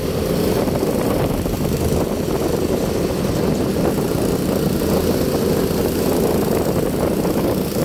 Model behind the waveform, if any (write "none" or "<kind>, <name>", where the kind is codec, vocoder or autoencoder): none